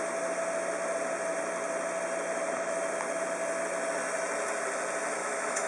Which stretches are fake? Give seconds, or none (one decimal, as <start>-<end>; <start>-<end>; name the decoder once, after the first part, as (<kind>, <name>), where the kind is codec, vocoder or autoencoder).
5.2-5.7 (autoencoder, DAC-VAE)